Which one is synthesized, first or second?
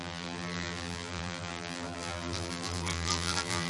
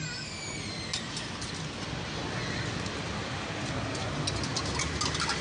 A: first